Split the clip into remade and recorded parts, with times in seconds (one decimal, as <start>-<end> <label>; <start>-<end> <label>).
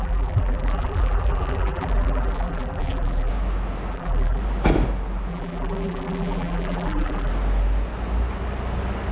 0.0-3.3 remade; 3.3-3.9 recorded; 3.9-4.4 remade; 4.4-5.3 recorded; 5.3-7.3 remade; 7.3-9.1 recorded